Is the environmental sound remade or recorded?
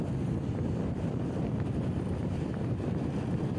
recorded